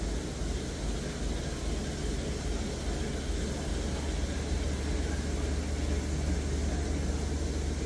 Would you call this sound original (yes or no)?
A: yes